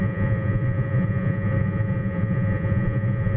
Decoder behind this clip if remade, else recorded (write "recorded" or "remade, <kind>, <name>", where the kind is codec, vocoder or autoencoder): remade, vocoder, Vocos